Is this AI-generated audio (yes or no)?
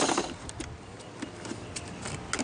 no